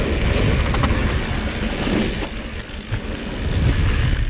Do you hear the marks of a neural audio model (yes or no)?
no